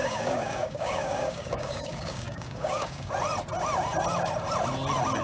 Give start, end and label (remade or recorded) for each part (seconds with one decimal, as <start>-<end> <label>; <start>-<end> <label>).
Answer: 0.0-3.1 remade; 3.1-5.2 recorded